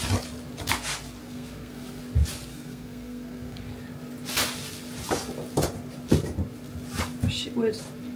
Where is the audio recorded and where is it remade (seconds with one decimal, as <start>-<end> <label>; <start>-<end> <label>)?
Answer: 0.0-1.2 recorded; 1.2-2.0 remade; 2.0-2.5 recorded; 2.5-3.6 remade; 3.6-8.2 recorded